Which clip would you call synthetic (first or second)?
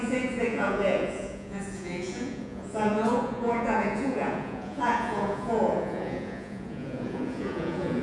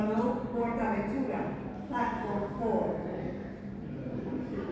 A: first